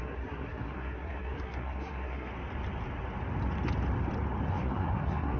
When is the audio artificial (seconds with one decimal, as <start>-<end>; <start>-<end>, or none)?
0.0-2.3; 4.5-5.4